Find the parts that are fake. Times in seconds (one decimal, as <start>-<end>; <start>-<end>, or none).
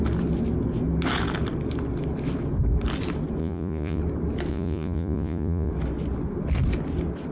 3.4-4.0; 4.5-5.7